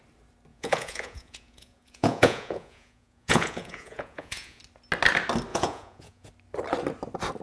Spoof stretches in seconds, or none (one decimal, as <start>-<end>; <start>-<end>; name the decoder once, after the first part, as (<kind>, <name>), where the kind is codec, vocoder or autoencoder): 0.5-4.6 (vocoder, Vocos); 5.5-6.3